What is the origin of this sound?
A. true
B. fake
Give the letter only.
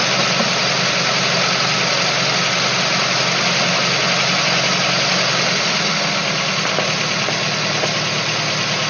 A